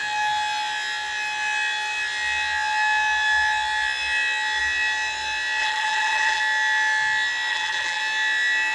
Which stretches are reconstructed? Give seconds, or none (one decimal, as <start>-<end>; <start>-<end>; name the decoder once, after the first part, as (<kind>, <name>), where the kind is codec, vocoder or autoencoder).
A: 5.6-6.4 (vocoder, BigVGAN v2); 7.5-8.0